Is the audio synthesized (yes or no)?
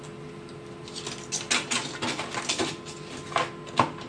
no